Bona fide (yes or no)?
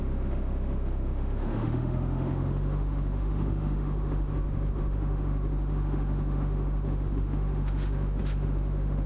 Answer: no